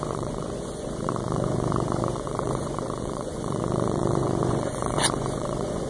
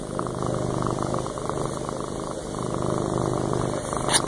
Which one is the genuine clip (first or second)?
second